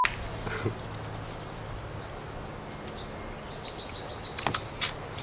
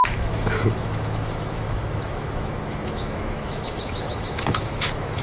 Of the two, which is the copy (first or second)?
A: second